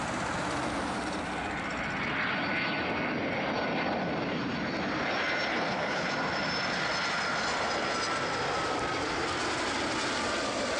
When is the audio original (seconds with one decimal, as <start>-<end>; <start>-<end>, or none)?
0.0-5.5; 6.1-10.8